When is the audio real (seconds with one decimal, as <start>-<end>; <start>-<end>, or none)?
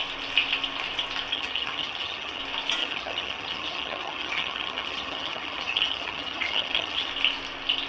0.0-1.3; 2.4-2.8; 7.1-7.9